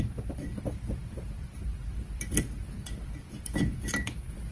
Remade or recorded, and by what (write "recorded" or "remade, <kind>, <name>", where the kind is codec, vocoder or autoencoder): remade, vocoder, BigVGAN v2